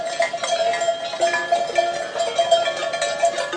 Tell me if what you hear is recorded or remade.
recorded